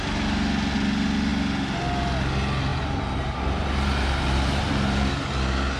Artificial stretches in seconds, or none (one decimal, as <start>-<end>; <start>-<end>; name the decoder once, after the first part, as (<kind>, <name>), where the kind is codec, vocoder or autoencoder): 2.7-5.1 (vocoder, BigVGAN v2)